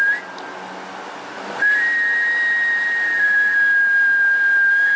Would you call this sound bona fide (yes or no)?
yes